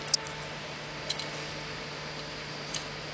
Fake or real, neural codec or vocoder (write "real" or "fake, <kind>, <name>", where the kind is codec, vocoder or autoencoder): real